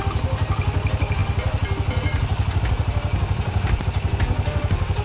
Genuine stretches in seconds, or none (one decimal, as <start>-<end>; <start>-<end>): 1.2-2.6